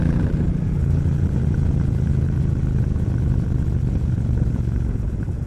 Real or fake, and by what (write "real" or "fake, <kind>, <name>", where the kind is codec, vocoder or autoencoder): fake, vocoder, Vocos